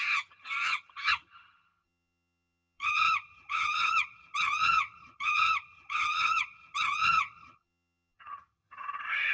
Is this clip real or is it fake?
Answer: fake